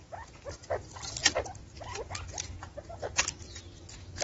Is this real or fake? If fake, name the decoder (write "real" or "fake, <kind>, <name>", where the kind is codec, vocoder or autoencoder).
real